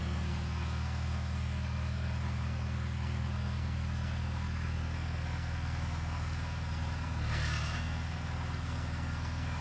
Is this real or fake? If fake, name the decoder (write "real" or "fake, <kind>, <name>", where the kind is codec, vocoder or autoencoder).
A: fake, codec, SNAC